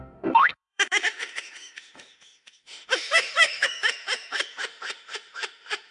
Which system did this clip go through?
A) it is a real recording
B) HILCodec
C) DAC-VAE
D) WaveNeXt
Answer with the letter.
C